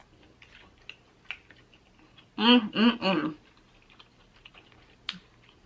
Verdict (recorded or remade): recorded